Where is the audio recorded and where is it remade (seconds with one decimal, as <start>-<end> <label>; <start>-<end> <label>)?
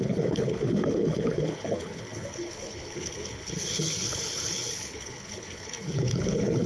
0.0-6.7 remade